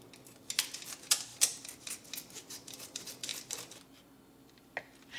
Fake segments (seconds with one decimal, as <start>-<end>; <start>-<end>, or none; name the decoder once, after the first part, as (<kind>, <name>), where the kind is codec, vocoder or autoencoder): none